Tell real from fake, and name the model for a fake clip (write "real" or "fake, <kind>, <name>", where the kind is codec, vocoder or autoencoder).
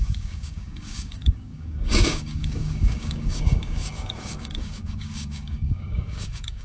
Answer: fake, codec, DAC